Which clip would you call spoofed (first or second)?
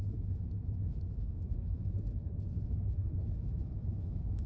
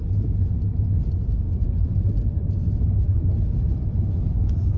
first